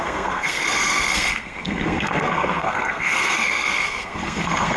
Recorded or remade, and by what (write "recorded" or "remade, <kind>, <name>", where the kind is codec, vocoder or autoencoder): remade, codec, SNAC